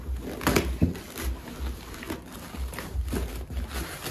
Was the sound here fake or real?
real